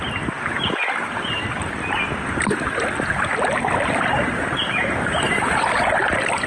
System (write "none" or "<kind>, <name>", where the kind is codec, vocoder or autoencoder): none